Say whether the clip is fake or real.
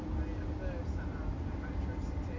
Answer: real